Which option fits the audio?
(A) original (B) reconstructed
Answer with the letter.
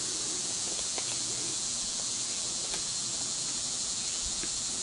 B